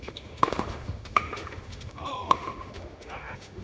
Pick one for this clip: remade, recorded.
remade